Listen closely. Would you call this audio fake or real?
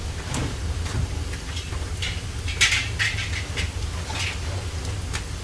real